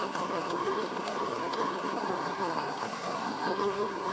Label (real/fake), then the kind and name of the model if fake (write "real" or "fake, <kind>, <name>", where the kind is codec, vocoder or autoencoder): fake, codec, SNAC